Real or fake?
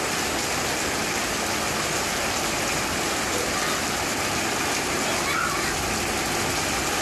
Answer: real